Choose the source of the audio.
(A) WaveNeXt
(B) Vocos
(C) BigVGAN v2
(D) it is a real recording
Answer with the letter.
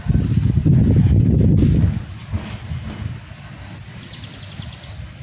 D